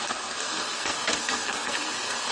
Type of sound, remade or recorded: remade